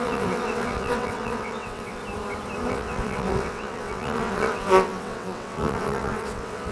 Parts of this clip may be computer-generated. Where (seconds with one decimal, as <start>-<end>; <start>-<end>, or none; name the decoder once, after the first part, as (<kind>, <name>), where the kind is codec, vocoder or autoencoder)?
0.0-2.0 (vocoder, WaveNeXt); 2.7-6.7